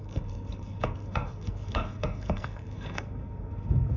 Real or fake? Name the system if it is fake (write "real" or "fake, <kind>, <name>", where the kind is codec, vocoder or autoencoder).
fake, codec, SNAC